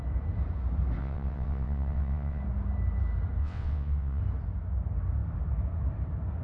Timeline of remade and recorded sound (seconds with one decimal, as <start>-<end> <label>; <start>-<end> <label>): 0.0-1.0 recorded; 1.0-2.4 remade; 2.4-3.4 recorded; 3.4-4.2 remade; 4.2-6.4 recorded